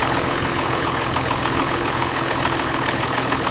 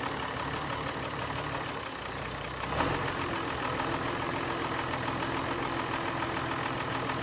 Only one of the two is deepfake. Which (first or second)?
first